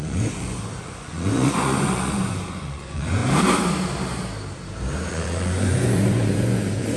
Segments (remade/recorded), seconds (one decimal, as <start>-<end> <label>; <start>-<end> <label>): 0.0-3.2 remade; 3.2-5.1 recorded; 5.1-7.0 remade